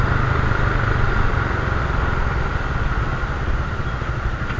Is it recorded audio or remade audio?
recorded